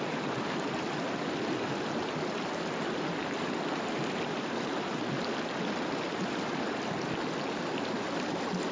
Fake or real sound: real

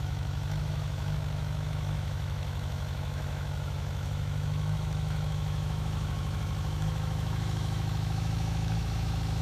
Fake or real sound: fake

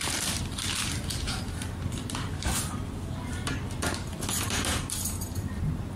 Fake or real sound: real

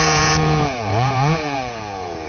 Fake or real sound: fake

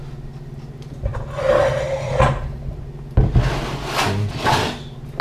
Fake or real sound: real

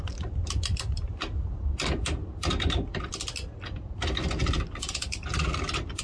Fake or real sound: real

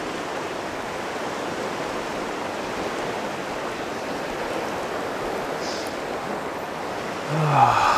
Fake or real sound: real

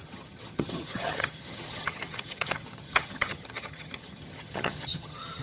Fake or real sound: fake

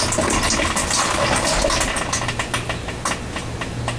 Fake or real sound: real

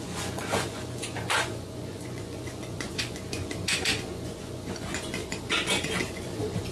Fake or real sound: fake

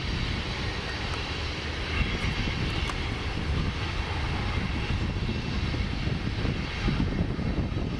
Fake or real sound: real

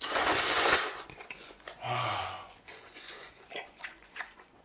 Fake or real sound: fake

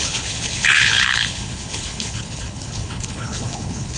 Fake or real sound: fake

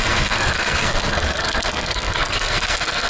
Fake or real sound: fake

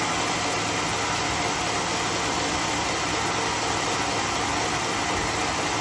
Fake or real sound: real